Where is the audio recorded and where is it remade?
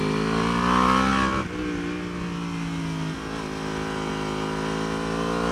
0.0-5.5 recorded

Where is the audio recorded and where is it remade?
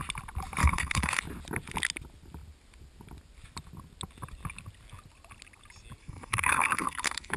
0.0-0.6 recorded; 0.6-1.2 remade; 1.2-6.0 recorded; 6.0-7.4 remade